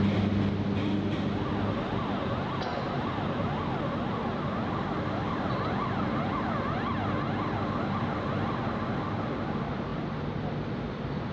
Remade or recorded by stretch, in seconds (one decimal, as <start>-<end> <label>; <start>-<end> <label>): 0.0-9.9 recorded; 9.9-10.5 remade; 10.5-11.3 recorded